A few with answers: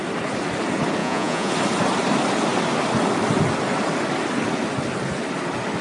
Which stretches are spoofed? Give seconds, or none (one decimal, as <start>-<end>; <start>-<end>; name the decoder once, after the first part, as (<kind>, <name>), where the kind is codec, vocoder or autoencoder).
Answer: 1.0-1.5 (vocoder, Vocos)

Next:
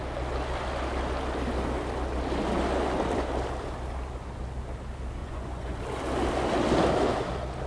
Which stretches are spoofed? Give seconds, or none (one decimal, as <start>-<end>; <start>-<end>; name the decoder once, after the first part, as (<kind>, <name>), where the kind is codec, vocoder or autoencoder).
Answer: 5.2-5.8 (vocoder, Vocos)

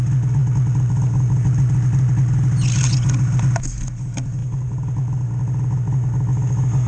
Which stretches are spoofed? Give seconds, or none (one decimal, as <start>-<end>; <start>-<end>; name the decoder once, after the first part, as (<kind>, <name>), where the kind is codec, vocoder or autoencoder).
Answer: none

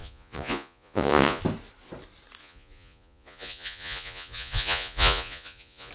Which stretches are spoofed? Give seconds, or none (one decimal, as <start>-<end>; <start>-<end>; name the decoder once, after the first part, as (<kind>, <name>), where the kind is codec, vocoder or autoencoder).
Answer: 0.0-1.4 (vocoder, Vocos); 2.4-5.9

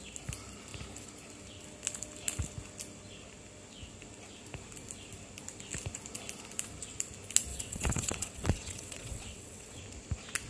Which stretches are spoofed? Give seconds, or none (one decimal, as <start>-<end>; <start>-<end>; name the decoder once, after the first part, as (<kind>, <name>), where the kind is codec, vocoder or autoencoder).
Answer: 7.5-9.8 (vocoder, WaveNeXt)